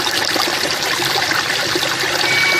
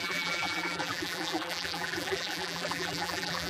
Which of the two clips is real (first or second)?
first